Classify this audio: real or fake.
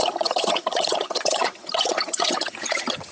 fake